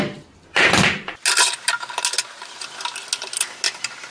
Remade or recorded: recorded